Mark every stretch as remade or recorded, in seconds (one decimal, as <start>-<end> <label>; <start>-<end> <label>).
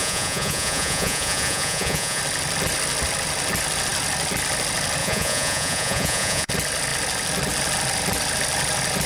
0.0-2.2 remade; 2.2-5.0 recorded; 5.0-6.5 remade; 6.5-9.1 recorded